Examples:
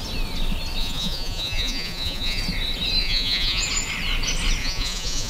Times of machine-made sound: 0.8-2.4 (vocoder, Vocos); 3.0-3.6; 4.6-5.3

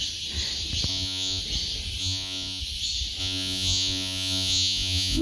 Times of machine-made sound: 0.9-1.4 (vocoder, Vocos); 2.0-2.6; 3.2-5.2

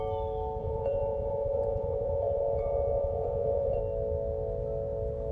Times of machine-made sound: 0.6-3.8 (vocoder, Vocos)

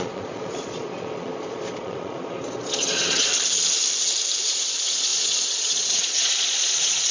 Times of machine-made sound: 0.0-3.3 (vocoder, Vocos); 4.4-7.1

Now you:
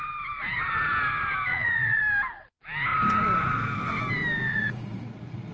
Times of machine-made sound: 1.5-2.0 (vocoder, Vocos); 4.5-5.5

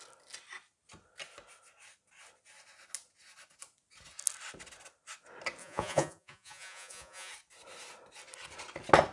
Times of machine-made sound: 5.6-7.3 (vocoder, Vocos)